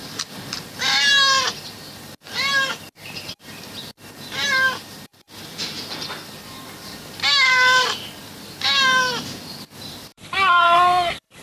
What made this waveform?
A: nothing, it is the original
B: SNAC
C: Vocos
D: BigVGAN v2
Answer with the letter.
D